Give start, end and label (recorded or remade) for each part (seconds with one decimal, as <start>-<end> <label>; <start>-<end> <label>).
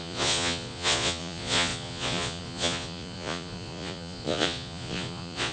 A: 0.0-5.5 remade